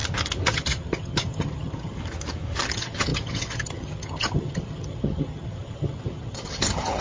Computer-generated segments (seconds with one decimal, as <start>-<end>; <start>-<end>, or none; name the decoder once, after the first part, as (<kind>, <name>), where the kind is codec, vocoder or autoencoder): 0.5-2.0 (vocoder, HiFi-GAN); 2.7-7.0